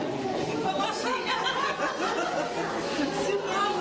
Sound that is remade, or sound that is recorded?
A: recorded